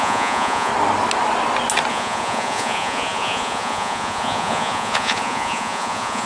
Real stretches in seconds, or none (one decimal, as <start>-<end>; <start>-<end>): 0.7-1.9